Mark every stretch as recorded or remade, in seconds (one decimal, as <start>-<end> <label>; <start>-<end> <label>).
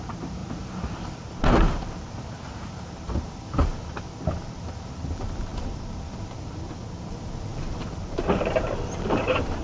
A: 0.0-3.7 remade; 3.7-4.4 recorded; 4.4-9.6 remade